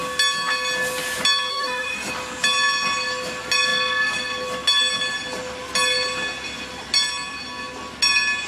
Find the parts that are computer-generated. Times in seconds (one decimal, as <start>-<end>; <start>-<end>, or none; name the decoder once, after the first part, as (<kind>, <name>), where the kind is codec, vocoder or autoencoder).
1.5-2.1 (autoencoder, DAC-VAE)